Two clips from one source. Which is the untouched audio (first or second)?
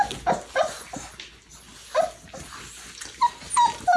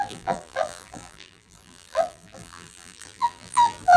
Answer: first